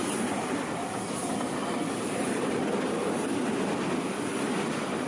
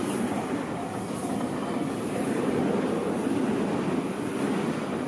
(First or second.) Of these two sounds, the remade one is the first